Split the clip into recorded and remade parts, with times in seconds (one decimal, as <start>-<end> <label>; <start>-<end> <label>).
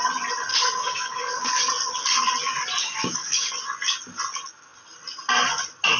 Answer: 0.0-0.5 recorded; 0.5-1.7 remade; 1.7-2.8 recorded; 2.8-3.5 remade; 3.5-6.0 recorded